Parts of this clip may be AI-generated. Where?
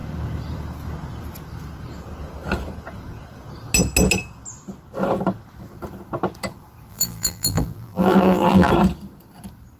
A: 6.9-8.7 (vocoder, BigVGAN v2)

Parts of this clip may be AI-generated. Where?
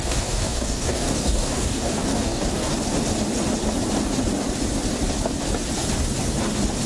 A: 0.0-2.7 (codec, DAC)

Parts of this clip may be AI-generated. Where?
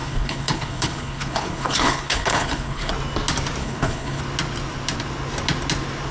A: 0.0-2.9 (codec, HILCodec); 3.6-4.2